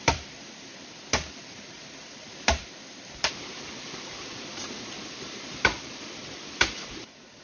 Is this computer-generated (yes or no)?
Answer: yes